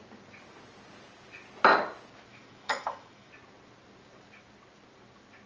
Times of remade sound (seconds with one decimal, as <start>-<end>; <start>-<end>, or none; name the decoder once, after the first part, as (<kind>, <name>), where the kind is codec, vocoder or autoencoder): 2.3-3.3 (autoencoder, DAC-VAE)